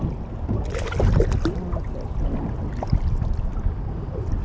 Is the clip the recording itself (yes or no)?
yes